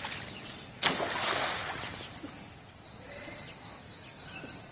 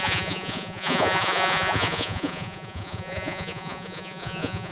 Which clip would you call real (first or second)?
first